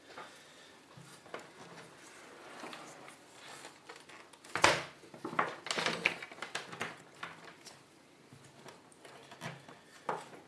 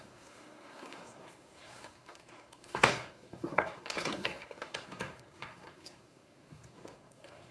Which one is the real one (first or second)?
first